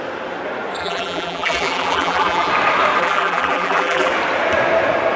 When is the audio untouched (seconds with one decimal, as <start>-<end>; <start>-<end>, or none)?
0.0-0.8; 2.5-3.0; 4.1-5.2